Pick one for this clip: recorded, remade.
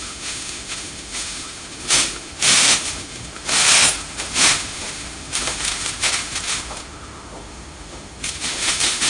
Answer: remade